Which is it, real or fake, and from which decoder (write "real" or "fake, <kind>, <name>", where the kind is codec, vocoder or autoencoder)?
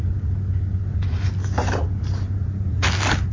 real